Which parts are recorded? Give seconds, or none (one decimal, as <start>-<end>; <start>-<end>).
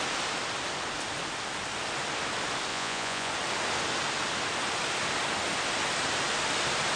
0.0-2.7; 3.3-7.0